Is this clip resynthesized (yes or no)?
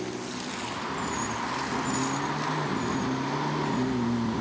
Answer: no